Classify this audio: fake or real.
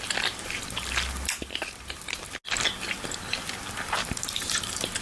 real